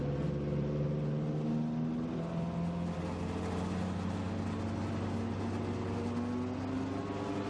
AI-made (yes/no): no